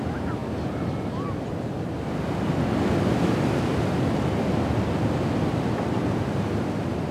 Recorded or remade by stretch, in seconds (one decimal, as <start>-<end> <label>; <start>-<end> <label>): 0.0-7.1 recorded